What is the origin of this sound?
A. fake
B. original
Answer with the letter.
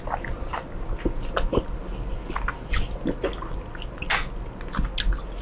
B